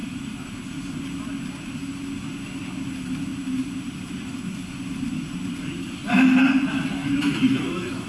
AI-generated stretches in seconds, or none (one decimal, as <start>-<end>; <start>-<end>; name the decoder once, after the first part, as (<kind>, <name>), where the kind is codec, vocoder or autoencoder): 0.0-0.5 (autoencoder, DAC-VAE); 7.0-8.1